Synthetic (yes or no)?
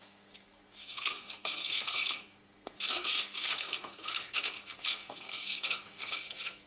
yes